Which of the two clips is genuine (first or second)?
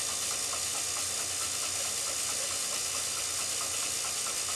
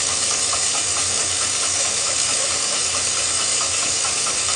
first